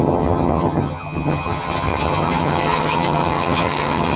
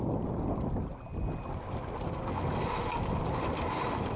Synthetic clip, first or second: first